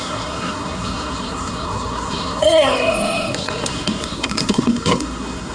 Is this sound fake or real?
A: fake